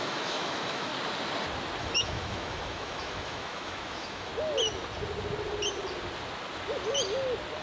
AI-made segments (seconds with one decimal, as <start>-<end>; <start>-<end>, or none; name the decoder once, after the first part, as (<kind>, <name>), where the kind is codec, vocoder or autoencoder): 0.0-0.9 (autoencoder, DAC-VAE); 1.8-4.3